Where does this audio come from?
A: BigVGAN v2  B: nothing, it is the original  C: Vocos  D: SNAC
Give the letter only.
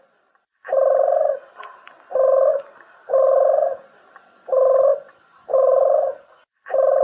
B